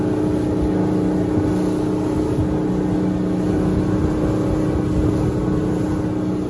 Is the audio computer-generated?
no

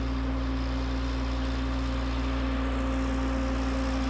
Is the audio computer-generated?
no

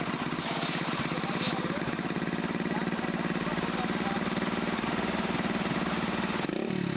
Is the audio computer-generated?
no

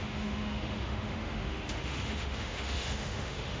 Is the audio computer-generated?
yes